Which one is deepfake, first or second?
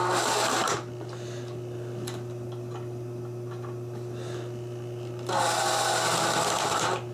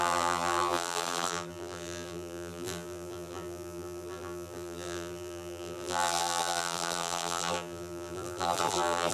second